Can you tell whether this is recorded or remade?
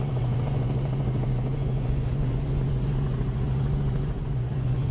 remade